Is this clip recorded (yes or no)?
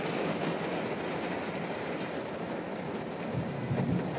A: yes